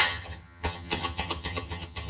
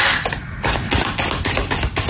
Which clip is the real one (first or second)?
second